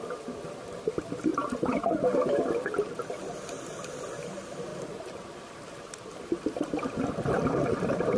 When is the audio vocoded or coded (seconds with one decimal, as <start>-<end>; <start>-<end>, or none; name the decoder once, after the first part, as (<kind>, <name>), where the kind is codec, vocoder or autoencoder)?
1.3-2.0 (vocoder, BigVGAN v2); 4.7-5.4